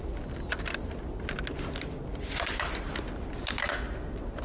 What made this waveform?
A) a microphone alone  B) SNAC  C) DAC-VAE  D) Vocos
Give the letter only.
A